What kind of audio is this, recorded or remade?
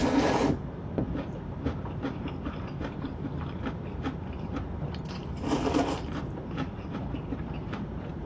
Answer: remade